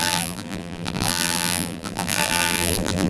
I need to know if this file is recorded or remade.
remade